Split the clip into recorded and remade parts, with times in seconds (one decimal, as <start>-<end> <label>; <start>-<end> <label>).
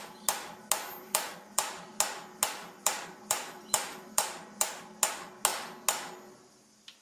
0.0-1.0 recorded; 1.0-1.9 remade; 1.9-2.6 recorded; 2.6-4.8 remade; 4.8-7.0 recorded